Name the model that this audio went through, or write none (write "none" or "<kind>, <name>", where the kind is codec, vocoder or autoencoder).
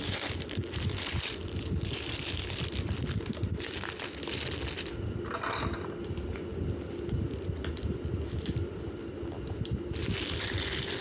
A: none